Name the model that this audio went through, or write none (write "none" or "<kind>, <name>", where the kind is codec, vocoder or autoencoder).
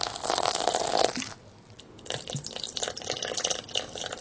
none